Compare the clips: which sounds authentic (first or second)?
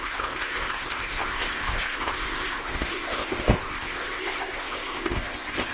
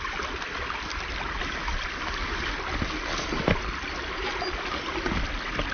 second